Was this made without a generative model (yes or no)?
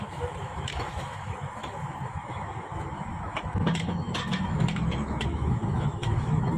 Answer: no